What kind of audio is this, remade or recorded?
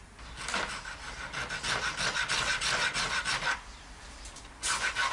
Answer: recorded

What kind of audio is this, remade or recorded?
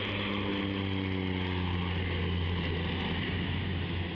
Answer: recorded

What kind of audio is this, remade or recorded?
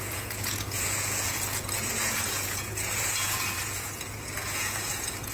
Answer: remade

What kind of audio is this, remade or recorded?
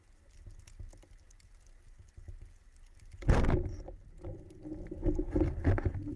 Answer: recorded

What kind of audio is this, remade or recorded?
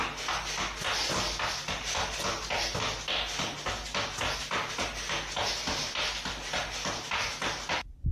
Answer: recorded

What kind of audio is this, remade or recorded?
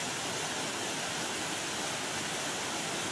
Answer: recorded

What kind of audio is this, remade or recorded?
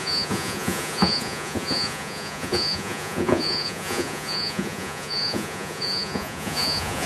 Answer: remade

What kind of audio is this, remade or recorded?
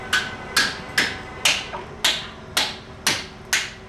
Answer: recorded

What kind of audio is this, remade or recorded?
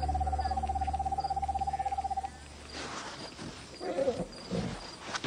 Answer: recorded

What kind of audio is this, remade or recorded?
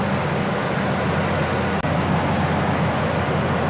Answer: recorded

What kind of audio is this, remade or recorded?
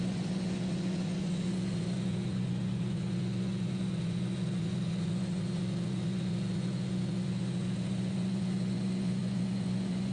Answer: remade